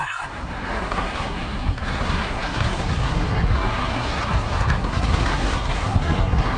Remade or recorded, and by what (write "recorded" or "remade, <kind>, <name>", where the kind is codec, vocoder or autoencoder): remade, codec, SNAC